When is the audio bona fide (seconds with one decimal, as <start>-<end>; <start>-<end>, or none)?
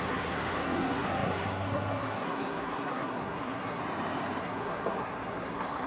3.8-4.4